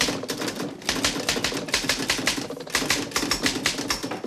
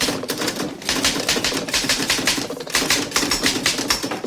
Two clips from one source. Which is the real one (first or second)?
first